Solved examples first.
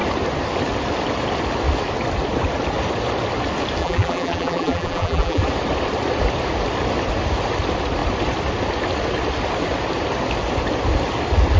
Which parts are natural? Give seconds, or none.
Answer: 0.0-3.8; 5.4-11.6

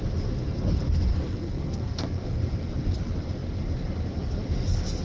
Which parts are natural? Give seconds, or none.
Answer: 0.0-1.1; 2.4-5.0

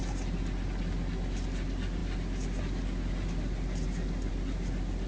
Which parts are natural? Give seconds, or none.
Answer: 0.0-5.1

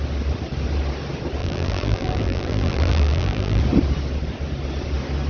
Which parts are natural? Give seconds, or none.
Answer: 0.0-1.4; 3.6-5.3

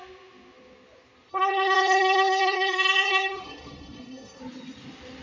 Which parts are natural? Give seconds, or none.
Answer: 0.0-1.3; 4.4-5.2

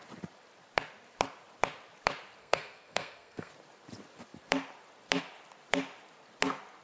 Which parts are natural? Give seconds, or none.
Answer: 0.0-2.4; 3.5-6.8

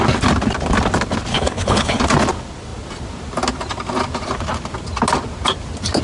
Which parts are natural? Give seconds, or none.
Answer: 0.0-1.3; 2.0-6.0